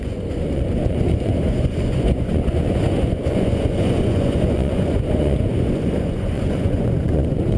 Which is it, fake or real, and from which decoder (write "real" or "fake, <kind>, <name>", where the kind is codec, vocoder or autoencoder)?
fake, vocoder, Vocos